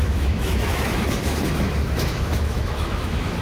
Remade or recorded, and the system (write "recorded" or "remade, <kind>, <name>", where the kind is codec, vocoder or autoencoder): remade, autoencoder, DAC-VAE